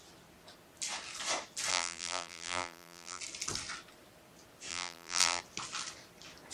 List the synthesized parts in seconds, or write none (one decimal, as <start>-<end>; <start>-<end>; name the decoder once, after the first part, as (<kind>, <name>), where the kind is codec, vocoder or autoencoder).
1.7-3.2 (vocoder, BigVGAN v2); 4.7-5.4